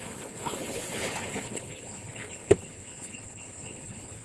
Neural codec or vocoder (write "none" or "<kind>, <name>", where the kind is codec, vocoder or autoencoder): codec, HILCodec